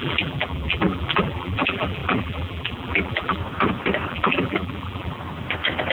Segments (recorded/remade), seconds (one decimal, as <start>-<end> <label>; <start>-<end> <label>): 0.0-3.4 remade; 3.4-4.1 recorded; 4.1-5.2 remade; 5.2-5.9 recorded